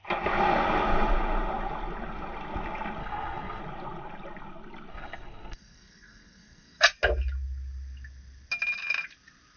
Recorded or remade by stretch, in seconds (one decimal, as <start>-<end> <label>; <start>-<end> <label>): 0.0-3.0 recorded; 3.0-3.6 remade; 3.6-4.9 recorded; 4.9-6.8 remade; 6.8-9.6 recorded